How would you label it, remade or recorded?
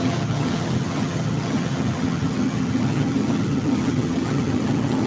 remade